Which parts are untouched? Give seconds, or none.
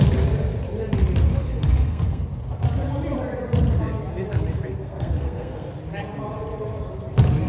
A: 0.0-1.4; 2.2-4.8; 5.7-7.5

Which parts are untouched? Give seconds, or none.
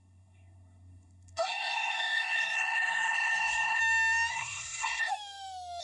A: 3.8-4.3; 5.1-5.8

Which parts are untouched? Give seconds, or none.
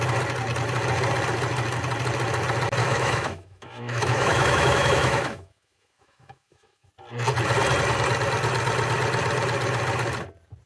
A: 0.0-2.8; 6.9-10.7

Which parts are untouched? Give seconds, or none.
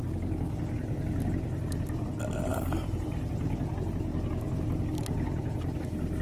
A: 0.0-2.5; 3.7-6.2